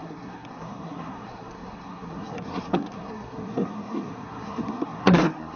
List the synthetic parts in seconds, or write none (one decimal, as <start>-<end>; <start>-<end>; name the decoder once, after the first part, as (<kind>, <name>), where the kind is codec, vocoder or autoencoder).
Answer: 0.0-5.6 (codec, SNAC)